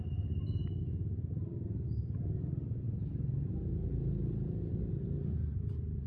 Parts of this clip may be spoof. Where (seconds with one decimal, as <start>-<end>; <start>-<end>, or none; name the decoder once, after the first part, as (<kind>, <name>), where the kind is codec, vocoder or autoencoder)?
none